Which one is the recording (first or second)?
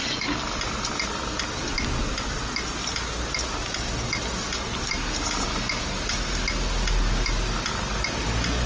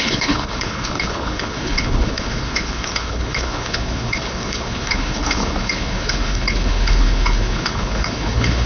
first